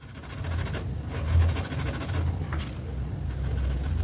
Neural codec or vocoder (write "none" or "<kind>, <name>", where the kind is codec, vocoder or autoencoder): none